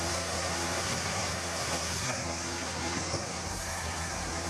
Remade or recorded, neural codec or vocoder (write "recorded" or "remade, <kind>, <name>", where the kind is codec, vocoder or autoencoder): remade, codec, SNAC